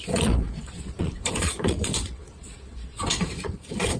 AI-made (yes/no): yes